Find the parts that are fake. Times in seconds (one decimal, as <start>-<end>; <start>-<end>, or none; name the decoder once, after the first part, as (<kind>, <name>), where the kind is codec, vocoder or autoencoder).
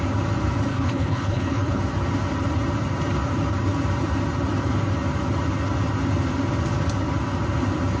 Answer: 0.7-1.8 (codec, HILCodec)